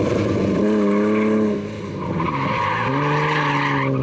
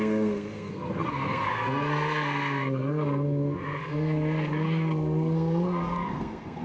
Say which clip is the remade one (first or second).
second